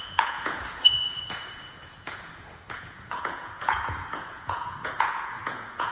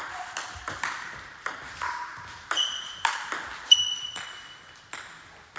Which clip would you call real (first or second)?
second